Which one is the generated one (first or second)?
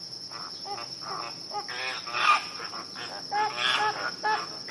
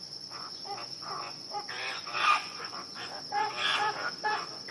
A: second